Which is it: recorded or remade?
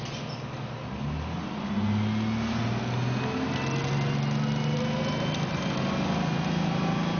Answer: recorded